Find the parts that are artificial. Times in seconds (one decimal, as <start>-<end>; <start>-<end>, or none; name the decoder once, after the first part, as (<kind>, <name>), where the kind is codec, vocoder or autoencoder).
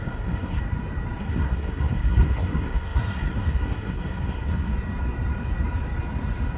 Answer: 0.0-0.6 (codec, SNAC); 1.2-4.7